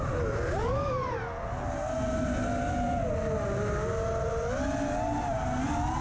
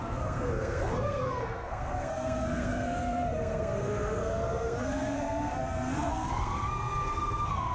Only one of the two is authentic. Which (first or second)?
first